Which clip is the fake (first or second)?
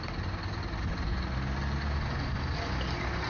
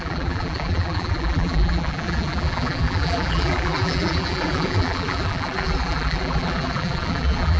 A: second